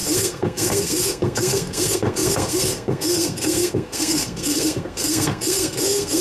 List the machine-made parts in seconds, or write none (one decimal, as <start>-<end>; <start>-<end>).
0.0-6.2